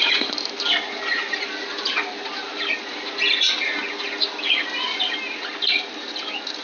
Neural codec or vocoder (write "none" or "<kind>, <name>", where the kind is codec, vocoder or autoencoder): none